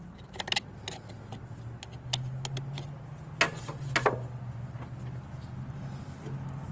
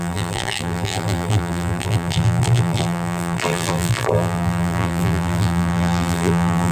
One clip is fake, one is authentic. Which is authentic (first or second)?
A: first